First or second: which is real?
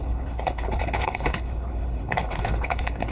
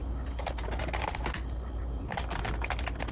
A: second